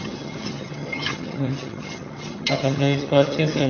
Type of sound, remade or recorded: remade